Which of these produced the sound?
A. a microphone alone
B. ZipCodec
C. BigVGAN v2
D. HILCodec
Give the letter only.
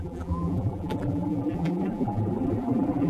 C